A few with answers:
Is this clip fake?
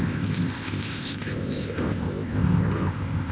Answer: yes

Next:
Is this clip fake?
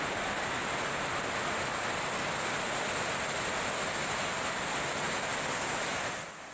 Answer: no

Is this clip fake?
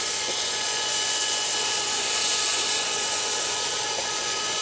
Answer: yes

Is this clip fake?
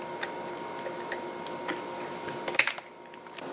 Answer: no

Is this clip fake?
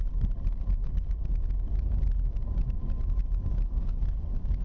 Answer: no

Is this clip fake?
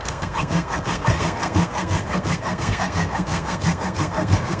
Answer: yes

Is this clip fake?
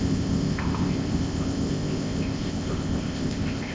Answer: yes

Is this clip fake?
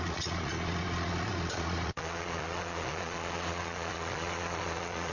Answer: yes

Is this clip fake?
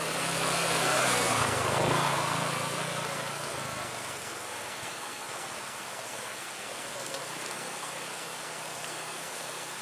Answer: yes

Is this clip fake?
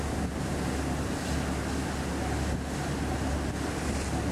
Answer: no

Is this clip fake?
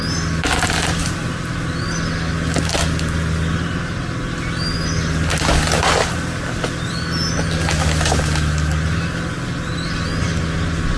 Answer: no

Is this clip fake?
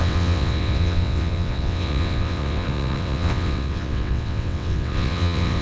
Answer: yes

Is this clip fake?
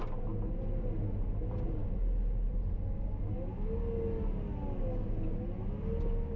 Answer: no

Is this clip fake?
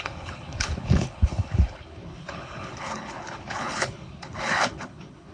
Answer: yes